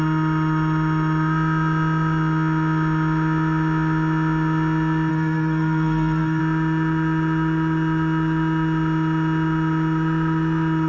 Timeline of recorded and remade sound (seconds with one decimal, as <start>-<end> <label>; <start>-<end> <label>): 0.0-5.1 recorded; 5.1-6.4 remade; 6.4-10.9 recorded